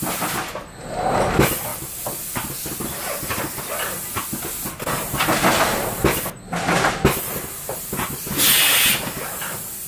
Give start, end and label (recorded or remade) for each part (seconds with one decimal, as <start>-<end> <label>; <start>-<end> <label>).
0.0-9.9 recorded